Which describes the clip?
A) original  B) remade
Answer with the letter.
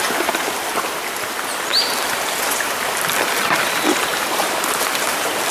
A